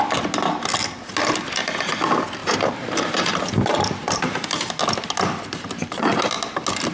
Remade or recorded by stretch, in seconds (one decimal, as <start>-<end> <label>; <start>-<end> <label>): 0.0-2.4 recorded; 2.4-4.2 remade; 4.2-6.9 recorded